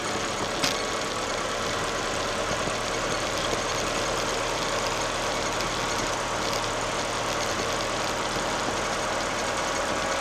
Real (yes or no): yes